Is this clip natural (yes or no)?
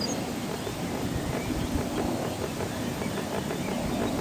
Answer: no